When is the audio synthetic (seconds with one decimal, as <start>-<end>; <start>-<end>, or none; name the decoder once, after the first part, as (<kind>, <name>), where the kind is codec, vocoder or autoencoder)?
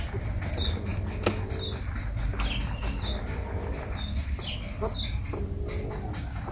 none